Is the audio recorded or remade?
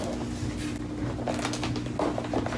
recorded